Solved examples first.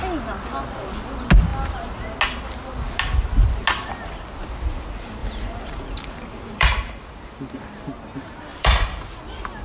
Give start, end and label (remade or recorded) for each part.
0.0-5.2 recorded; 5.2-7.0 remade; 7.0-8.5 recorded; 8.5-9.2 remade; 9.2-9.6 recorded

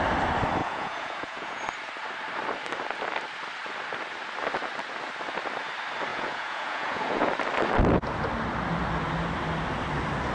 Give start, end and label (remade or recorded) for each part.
0.0-0.6 recorded; 0.6-1.6 remade; 1.6-6.1 recorded; 6.1-7.3 remade; 7.3-10.3 recorded